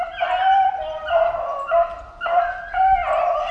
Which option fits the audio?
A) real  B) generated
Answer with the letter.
A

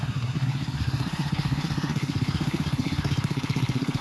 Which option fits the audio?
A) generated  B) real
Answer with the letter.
A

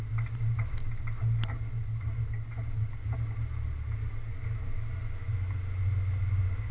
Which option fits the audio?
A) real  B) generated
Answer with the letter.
A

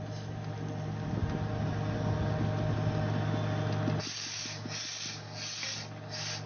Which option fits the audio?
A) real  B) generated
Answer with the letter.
A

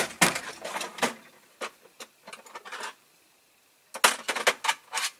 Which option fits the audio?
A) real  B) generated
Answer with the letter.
A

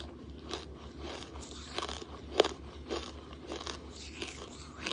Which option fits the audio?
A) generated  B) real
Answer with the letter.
B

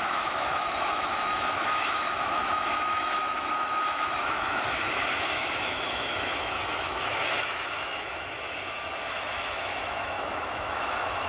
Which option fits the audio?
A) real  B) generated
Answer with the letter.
B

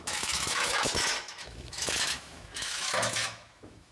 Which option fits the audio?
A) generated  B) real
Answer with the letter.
A